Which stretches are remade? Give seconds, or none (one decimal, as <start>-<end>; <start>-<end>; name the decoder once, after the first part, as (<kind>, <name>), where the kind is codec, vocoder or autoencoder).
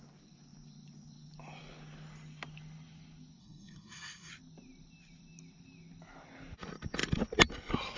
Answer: 3.4-4.3 (codec, SNAC)